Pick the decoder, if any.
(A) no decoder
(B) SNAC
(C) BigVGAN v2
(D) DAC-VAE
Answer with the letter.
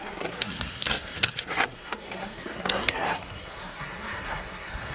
B